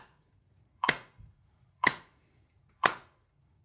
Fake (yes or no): yes